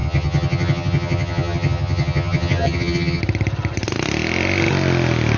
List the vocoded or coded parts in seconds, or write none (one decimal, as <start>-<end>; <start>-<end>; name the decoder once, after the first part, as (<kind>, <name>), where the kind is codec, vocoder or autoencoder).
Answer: 0.0-3.2 (vocoder, HiFi-GAN)